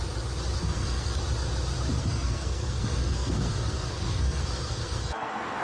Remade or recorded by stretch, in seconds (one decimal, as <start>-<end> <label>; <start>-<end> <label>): 0.0-0.6 recorded; 0.6-1.2 remade; 1.2-2.0 recorded; 2.0-5.6 remade